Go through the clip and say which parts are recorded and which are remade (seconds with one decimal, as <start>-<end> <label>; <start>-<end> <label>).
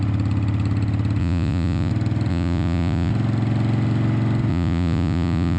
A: 0.0-1.2 recorded; 1.2-1.9 remade; 1.9-2.3 recorded; 2.3-3.1 remade; 3.1-4.5 recorded; 4.5-5.6 remade